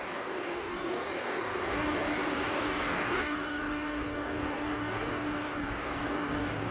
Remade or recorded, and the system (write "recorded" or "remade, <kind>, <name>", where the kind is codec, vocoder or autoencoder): remade, codec, DAC